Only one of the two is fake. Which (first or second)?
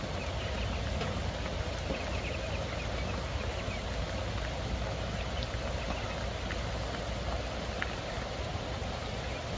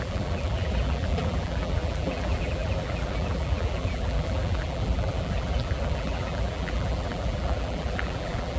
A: second